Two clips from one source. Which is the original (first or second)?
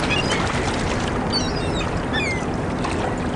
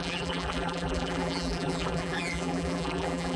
first